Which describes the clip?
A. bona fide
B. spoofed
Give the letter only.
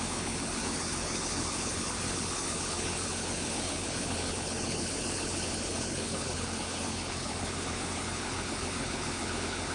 B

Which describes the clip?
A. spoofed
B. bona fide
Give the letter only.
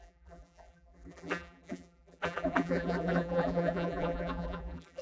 A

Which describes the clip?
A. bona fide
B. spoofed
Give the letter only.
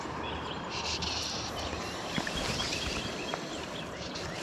A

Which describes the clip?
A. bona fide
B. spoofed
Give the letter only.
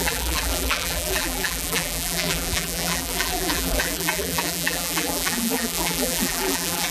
B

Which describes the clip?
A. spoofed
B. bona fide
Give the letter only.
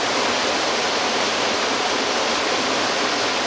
B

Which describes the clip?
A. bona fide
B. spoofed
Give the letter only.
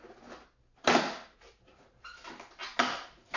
A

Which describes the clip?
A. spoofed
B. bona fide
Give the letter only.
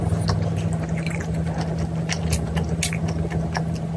B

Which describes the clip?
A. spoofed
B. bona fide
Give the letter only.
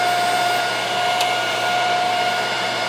A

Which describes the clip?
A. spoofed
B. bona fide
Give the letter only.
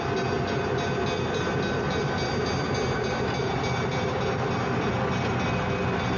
B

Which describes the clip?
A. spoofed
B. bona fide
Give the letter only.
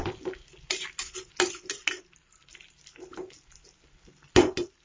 B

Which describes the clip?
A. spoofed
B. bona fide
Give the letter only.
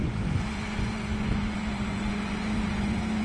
A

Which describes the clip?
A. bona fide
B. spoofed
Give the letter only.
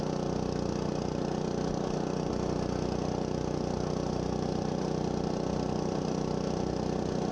A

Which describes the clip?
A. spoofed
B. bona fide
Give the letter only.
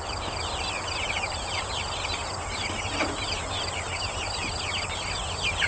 B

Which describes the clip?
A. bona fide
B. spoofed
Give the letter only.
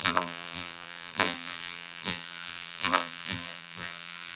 B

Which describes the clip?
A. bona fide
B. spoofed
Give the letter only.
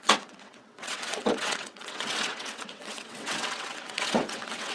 B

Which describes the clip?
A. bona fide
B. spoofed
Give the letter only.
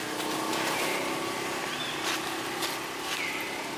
A